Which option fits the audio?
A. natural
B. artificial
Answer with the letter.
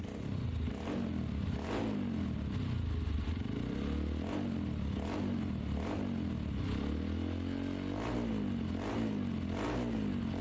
A